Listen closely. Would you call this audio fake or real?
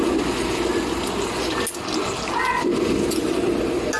real